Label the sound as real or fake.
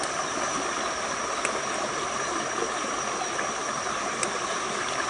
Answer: real